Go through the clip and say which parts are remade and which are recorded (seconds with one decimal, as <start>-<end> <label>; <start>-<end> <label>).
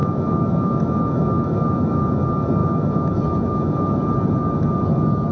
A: 0.0-2.2 remade; 2.2-2.6 recorded; 2.6-4.0 remade; 4.0-5.3 recorded